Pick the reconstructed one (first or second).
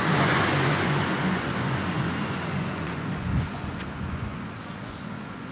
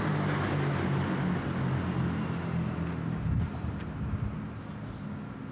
first